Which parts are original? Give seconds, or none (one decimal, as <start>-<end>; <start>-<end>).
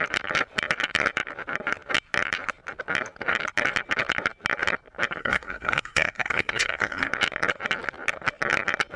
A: 0.0-5.2; 7.1-9.0